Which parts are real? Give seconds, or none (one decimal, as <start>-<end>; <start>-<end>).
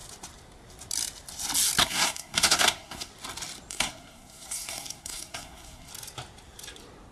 0.0-1.8; 3.1-3.7; 5.9-7.1